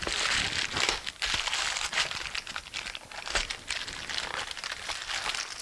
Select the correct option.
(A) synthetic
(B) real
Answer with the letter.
A